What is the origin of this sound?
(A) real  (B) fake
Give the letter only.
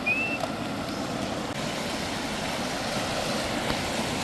A